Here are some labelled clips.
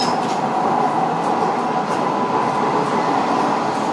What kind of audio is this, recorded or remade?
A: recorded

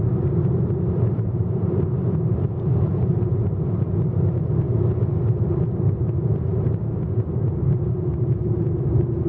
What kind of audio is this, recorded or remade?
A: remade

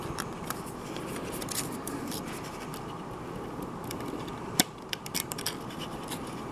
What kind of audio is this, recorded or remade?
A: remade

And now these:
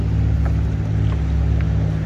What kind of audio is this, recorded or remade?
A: recorded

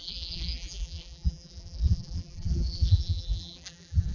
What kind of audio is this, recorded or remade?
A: remade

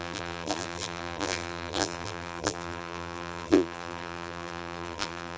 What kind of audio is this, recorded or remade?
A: remade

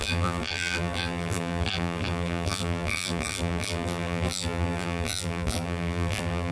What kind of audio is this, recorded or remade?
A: remade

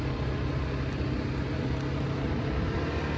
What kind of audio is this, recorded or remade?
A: recorded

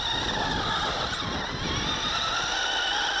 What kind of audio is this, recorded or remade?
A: recorded